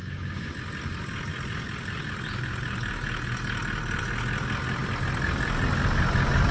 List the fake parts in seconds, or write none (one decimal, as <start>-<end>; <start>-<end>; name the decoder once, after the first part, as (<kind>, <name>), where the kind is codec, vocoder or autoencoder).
0.0-0.5 (autoencoder, DAC-VAE)